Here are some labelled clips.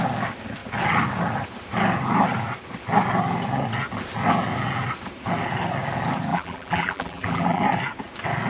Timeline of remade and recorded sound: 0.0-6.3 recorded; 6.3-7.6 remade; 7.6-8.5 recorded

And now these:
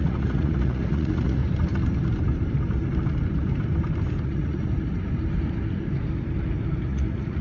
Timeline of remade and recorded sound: 0.0-1.4 remade; 1.4-4.2 recorded; 4.2-4.7 remade; 4.7-6.8 recorded; 6.8-7.4 remade

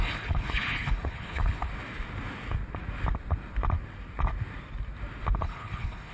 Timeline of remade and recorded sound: 0.0-1.7 remade; 1.7-5.4 recorded; 5.4-6.1 remade

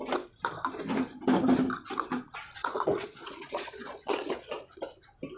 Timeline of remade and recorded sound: 0.0-2.6 recorded; 2.6-4.8 remade; 4.8-5.4 recorded